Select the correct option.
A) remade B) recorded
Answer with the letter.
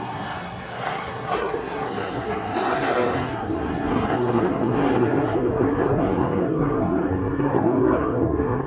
A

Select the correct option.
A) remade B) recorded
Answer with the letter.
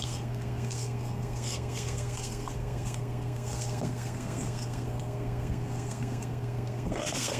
A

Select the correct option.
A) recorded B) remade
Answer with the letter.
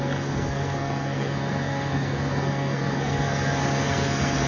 B